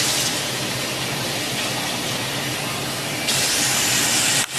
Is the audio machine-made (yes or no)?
no